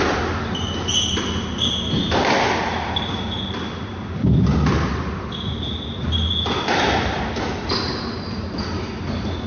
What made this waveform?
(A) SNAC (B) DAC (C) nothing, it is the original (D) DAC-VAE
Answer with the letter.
C